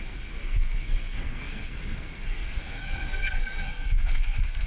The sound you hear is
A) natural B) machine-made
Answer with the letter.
B